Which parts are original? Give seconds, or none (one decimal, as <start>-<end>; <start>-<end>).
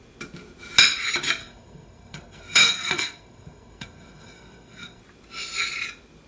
0.0-1.4; 5.0-6.3